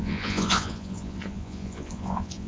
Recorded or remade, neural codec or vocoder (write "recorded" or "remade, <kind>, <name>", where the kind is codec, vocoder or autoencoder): remade, vocoder, Vocos